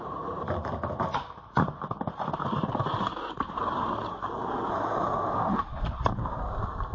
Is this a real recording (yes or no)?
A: no